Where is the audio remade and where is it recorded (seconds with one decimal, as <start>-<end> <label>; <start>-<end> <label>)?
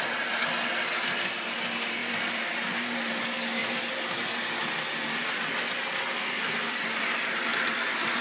0.0-2.0 recorded; 2.0-3.1 remade; 3.1-3.6 recorded; 3.6-5.3 remade; 5.3-7.5 recorded; 7.5-8.2 remade